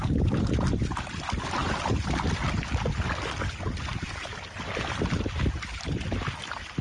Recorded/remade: recorded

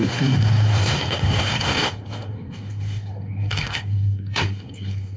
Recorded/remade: remade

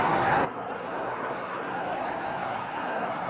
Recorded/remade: remade